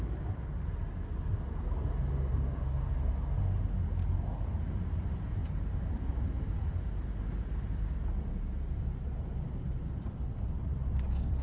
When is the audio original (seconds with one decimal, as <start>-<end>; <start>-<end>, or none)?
0.0-11.4